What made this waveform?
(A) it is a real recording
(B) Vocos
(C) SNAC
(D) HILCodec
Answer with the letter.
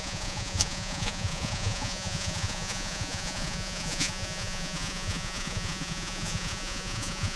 B